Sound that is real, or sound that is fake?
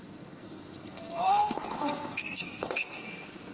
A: fake